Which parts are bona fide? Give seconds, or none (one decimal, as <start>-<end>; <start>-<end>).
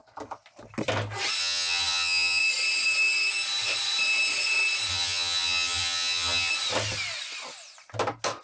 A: 0.0-1.4; 2.4-4.9; 6.5-8.4